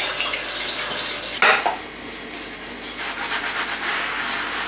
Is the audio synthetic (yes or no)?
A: no